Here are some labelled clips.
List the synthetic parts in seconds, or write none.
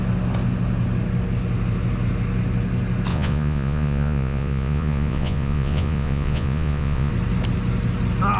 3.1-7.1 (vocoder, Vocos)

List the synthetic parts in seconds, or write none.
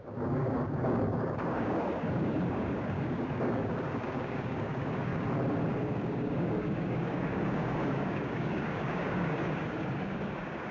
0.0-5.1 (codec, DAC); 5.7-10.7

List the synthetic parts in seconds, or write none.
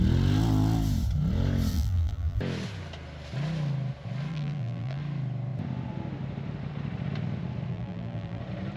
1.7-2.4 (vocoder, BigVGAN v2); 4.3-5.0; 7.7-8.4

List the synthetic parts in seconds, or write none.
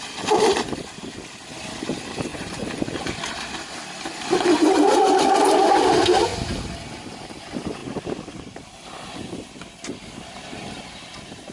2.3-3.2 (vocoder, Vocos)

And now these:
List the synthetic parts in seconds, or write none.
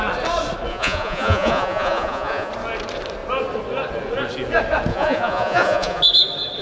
0.7-2.5 (vocoder, Vocos); 4.9-6.0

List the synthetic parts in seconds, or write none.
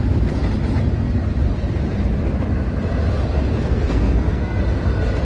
3.5-4.6 (codec, SNAC)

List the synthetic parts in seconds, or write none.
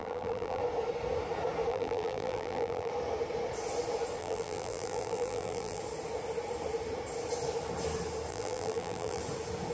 0.0-0.6 (vocoder, BigVGAN v2); 1.7-2.9; 4.2-5.8; 8.3-9.2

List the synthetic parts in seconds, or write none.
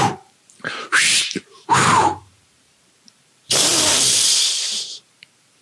0.0-5.6 (vocoder, BigVGAN v2)